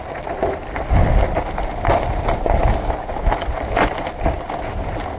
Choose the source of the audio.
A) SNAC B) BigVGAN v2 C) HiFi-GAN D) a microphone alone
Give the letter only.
D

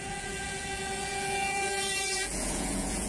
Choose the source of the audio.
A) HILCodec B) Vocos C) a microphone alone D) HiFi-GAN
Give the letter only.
B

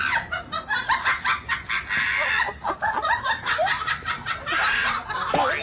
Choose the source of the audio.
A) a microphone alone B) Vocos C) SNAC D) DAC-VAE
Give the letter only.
A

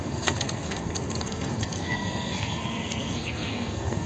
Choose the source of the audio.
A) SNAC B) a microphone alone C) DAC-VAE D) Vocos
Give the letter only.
A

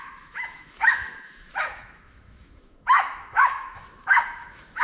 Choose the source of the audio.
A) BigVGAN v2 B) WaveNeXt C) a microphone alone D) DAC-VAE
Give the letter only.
D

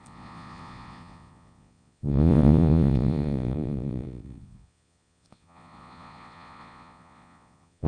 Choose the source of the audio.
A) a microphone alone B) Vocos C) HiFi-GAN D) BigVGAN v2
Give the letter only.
B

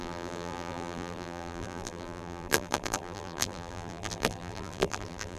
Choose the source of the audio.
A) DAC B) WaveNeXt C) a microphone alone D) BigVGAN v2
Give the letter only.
D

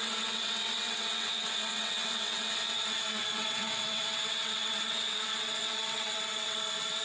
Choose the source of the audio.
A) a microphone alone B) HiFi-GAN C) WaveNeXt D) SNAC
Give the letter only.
C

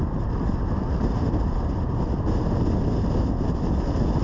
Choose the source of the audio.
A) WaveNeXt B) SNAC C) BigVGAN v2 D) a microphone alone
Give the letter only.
D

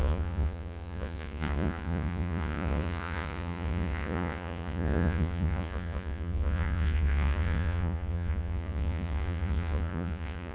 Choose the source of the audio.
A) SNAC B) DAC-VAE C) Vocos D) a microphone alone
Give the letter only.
C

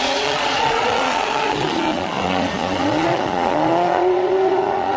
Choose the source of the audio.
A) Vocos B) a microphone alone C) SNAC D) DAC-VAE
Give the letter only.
A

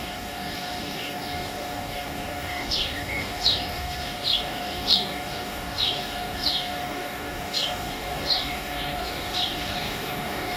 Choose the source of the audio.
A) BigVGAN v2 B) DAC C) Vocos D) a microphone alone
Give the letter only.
B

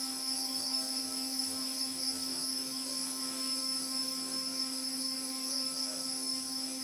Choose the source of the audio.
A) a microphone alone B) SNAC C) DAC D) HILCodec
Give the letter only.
C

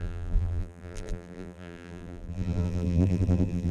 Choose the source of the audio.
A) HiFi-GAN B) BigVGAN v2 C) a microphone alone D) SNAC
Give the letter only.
B